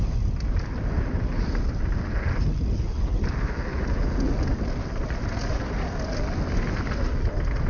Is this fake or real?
real